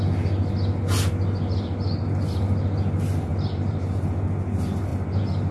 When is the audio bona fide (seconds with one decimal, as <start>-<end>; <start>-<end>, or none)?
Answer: 0.0-3.3; 4.1-4.9